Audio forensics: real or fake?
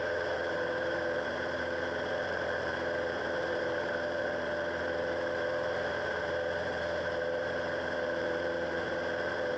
fake